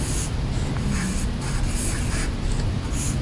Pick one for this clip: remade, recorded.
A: recorded